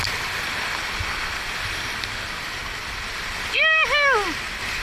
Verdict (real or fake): real